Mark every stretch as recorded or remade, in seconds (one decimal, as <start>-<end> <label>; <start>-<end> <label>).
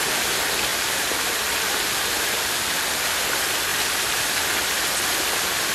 0.0-5.7 recorded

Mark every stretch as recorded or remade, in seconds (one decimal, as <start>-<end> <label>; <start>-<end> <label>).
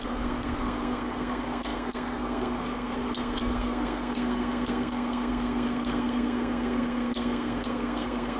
0.0-8.4 remade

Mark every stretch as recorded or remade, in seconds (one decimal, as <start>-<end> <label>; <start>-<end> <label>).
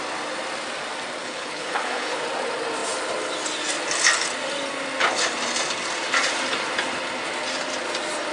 0.0-1.2 recorded; 1.2-2.2 remade; 2.2-8.3 recorded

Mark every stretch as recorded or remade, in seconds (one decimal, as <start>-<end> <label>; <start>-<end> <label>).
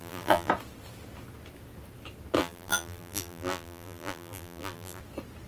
0.0-0.5 remade; 0.5-2.4 recorded; 2.4-5.0 remade; 5.0-5.5 recorded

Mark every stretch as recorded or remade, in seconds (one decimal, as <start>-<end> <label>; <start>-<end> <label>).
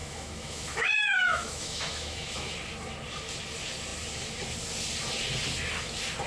0.0-2.5 remade; 2.5-6.3 recorded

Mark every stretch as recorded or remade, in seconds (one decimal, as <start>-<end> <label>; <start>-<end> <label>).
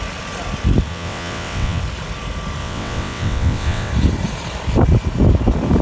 0.0-0.9 recorded; 0.9-1.8 remade; 1.8-2.6 recorded; 2.6-3.9 remade; 3.9-5.8 recorded